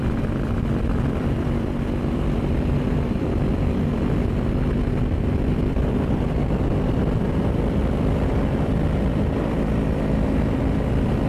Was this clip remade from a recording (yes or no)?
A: yes